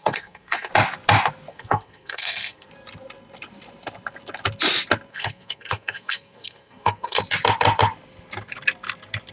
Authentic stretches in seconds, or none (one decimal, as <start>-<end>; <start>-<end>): 0.7-1.5; 2.7-5.1; 7.2-9.3